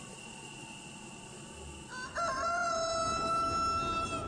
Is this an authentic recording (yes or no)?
yes